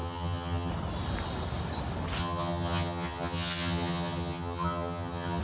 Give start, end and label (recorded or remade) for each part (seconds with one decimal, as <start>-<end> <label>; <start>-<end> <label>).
0.0-0.7 remade; 0.7-2.2 recorded; 2.2-5.4 remade